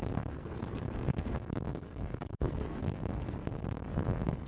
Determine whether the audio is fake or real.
fake